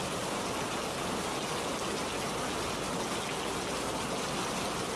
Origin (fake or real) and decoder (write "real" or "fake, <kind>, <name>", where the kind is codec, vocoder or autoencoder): real